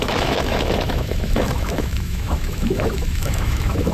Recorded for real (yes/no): no